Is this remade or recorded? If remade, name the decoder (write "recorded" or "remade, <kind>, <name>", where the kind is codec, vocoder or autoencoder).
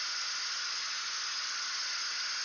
recorded